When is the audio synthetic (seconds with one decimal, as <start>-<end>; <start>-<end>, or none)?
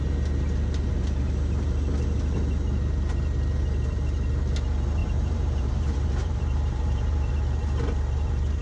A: 5.0-7.3